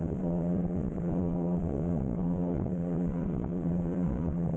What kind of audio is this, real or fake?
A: fake